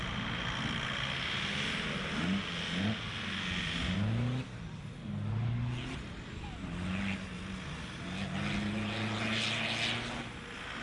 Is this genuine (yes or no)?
yes